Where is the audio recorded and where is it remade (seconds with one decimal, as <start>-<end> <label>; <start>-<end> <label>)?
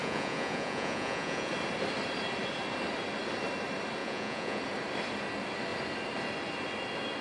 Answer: 0.0-1.5 remade; 1.5-4.0 recorded; 4.0-4.6 remade; 4.6-7.2 recorded